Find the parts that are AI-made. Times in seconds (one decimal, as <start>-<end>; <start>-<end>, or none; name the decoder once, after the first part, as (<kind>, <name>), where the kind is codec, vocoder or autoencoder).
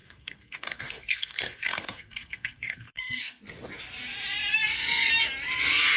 0.0-3.4 (codec, SNAC); 4.5-5.1